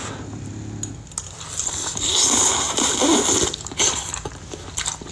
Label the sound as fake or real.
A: real